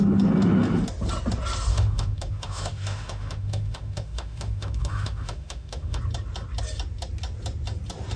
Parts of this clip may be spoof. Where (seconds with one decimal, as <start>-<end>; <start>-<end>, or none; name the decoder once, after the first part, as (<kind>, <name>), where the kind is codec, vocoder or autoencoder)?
1.7-6.0 (autoencoder, DAC-VAE)